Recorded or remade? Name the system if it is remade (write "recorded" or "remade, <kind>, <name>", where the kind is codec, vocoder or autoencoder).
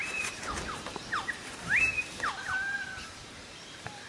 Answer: remade, vocoder, BigVGAN v2